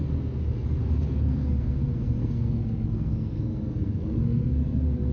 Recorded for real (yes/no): no